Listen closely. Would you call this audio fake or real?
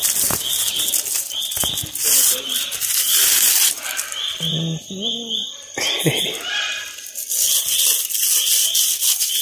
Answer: real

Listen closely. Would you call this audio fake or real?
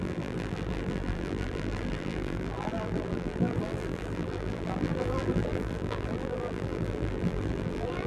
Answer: fake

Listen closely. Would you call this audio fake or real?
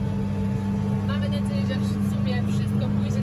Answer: real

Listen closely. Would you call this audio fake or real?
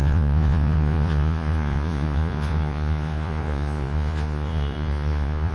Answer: fake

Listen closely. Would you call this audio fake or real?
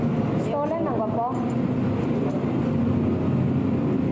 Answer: real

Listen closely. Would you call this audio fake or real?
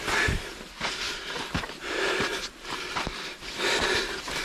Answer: real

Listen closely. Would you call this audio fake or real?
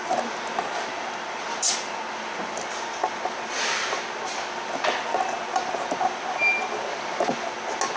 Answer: real